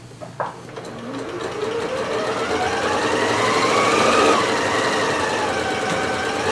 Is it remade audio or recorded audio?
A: recorded